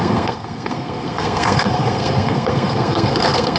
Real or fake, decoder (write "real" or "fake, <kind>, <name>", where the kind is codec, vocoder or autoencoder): fake, codec, SNAC